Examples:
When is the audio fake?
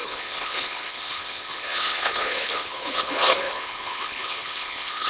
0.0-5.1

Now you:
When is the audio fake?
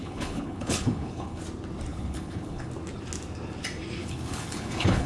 0.0-1.4; 1.9-2.7; 4.0-5.1